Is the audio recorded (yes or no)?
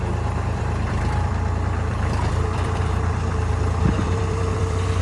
no